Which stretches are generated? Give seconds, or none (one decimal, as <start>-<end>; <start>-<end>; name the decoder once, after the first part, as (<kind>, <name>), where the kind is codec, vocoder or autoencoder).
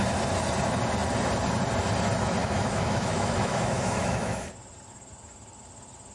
2.4-4.5 (autoencoder, DAC-VAE)